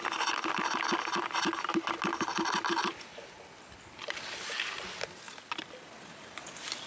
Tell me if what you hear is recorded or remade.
recorded